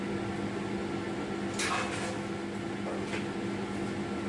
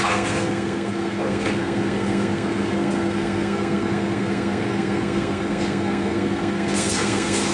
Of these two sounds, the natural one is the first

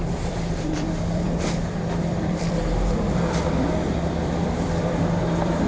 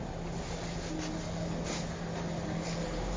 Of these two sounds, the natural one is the second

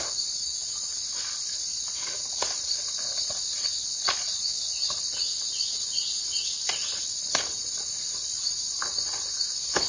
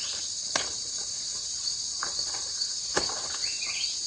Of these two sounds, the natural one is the first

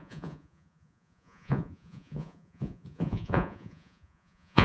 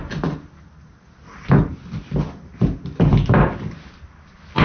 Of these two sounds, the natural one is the second